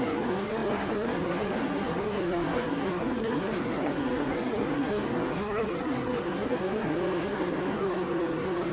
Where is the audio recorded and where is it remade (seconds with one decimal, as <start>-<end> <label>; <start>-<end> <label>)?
0.0-8.7 remade

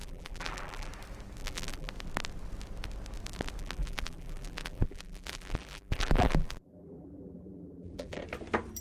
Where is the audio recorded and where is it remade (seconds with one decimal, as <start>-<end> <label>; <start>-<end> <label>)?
0.0-0.9 remade; 0.9-1.4 recorded; 1.4-1.9 remade; 1.9-3.6 recorded; 3.6-8.2 remade; 8.2-8.8 recorded

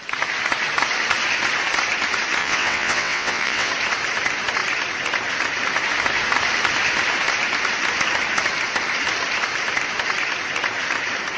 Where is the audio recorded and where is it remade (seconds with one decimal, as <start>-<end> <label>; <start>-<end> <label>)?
0.0-2.4 recorded; 2.4-3.7 remade; 3.7-11.4 recorded

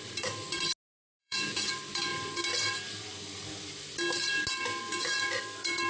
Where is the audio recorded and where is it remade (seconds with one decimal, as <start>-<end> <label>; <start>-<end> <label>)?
0.0-1.2 recorded; 1.2-1.7 remade; 1.7-5.9 recorded

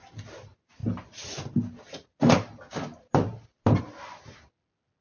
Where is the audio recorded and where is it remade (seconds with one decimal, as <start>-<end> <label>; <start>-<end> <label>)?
0.0-5.0 recorded

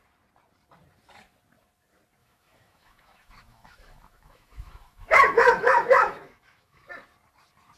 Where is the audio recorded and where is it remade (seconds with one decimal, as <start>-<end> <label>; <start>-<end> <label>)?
0.0-2.2 recorded; 2.2-6.9 remade; 6.9-7.8 recorded

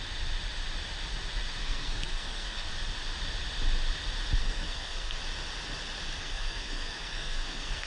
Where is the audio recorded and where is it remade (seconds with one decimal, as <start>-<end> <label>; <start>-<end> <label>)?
0.0-1.6 recorded; 1.6-2.7 remade; 2.7-4.4 recorded; 4.4-5.2 remade; 5.2-6.2 recorded; 6.2-7.9 remade

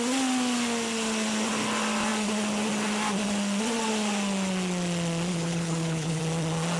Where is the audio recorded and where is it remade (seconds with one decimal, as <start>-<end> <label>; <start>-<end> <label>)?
0.0-5.3 recorded; 5.3-6.2 remade; 6.2-6.8 recorded